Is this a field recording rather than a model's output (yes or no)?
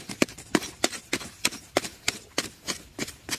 no